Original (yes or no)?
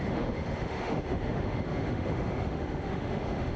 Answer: no